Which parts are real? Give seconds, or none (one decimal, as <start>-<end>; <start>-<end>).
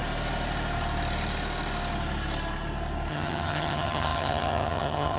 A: 0.0-3.1